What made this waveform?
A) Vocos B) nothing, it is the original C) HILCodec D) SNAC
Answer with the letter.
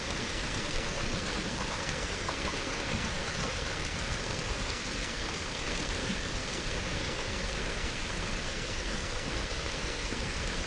D